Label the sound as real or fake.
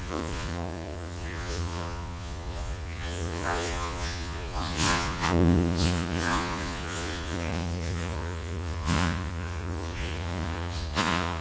fake